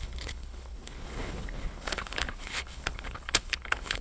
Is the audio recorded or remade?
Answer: remade